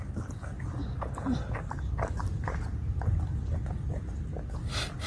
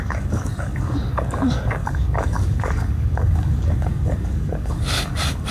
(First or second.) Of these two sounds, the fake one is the second